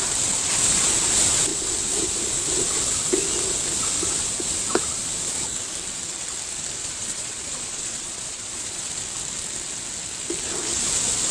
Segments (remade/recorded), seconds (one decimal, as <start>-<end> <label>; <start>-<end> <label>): 0.0-6.8 recorded; 6.8-8.9 remade; 8.9-11.3 recorded